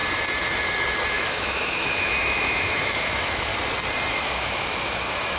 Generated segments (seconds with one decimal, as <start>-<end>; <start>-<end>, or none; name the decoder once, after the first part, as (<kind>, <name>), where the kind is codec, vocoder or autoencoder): 1.1-3.5 (autoencoder, DAC-VAE); 4.1-5.4